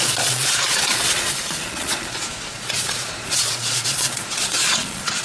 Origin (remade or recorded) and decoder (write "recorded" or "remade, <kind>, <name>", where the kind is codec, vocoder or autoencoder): remade, vocoder, Vocos